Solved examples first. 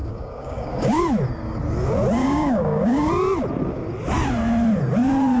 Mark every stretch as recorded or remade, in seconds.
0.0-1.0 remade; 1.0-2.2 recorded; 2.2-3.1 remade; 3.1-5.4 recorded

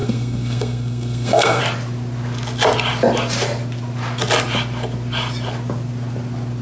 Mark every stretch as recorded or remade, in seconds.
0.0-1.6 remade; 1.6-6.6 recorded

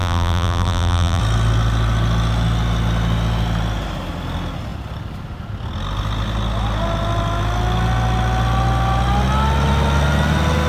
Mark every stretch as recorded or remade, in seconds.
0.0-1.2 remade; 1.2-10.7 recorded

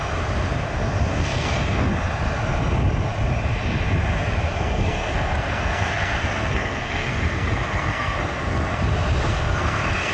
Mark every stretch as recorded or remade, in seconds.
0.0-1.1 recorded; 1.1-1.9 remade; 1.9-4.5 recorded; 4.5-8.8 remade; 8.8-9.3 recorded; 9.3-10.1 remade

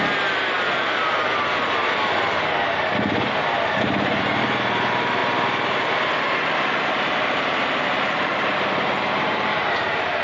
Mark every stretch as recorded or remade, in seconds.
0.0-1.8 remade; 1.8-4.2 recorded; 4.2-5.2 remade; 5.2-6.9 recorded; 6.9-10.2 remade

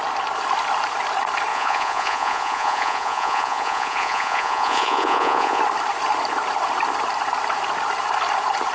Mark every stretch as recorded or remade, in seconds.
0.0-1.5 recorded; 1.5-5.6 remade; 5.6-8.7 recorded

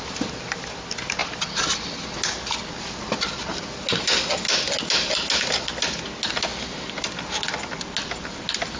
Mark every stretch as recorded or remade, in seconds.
0.0-8.8 recorded

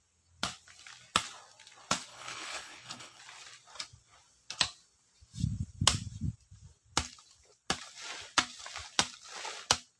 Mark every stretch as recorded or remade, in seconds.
0.0-2.1 recorded; 2.1-3.2 remade; 3.2-10.0 recorded